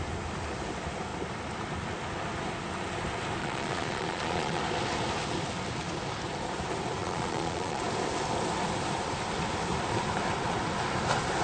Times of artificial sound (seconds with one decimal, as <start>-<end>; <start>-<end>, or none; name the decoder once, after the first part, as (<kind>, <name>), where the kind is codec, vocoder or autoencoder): 3.4-4.6 (vocoder, Vocos); 7.0-7.8

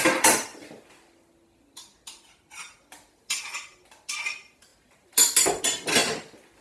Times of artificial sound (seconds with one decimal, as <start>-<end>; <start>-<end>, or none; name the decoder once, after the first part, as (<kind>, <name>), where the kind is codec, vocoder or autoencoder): none

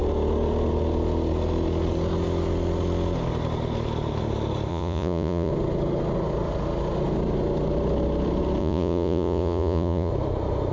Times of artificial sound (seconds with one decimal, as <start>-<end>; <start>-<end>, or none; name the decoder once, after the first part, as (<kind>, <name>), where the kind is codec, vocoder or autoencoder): 4.7-5.5 (vocoder, Vocos); 8.6-10.1